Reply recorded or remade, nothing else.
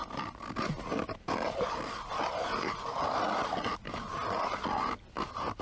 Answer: recorded